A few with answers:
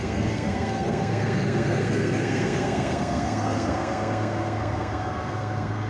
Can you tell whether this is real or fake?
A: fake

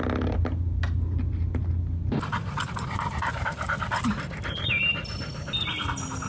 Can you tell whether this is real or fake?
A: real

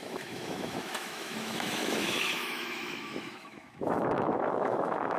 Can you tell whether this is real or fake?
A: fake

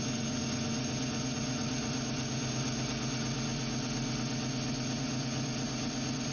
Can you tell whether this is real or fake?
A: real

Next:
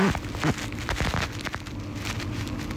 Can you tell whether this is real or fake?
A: real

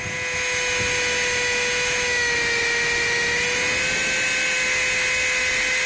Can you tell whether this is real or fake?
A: real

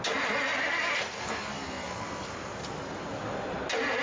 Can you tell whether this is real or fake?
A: real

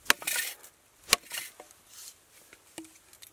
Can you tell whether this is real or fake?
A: real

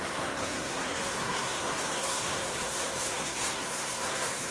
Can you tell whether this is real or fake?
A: fake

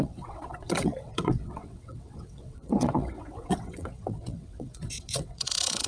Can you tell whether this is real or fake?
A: fake